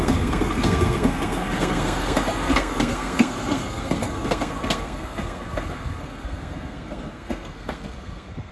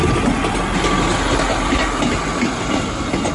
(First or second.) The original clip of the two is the second